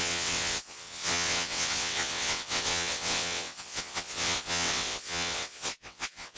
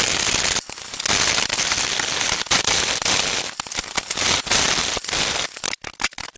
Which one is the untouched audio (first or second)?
second